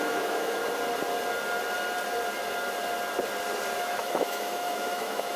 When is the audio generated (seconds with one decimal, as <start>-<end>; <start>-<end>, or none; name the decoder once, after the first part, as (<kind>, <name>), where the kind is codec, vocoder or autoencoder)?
0.0-0.6 (autoencoder, DAC-VAE); 3.8-5.4